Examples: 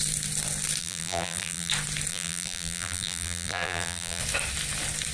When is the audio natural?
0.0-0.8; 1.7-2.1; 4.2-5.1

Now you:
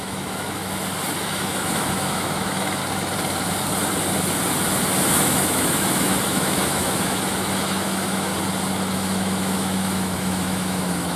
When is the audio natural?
0.6-1.2; 2.8-5.1; 8.3-8.9

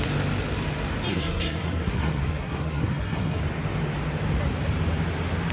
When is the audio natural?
0.0-1.1; 3.4-5.5